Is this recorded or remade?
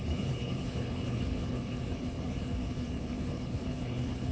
remade